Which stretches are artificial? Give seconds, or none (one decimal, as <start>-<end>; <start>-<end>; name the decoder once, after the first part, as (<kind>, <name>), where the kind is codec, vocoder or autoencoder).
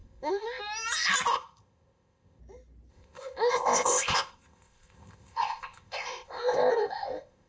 0.0-0.6 (codec, ZipCodec); 1.3-2.4; 2.9-7.5